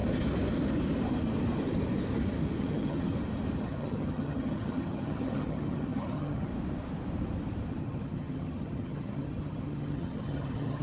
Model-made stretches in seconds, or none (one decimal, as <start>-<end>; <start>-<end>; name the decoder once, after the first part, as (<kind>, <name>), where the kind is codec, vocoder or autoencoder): 2.6-3.1 (vocoder, HiFi-GAN); 3.6-6.5; 7.8-10.8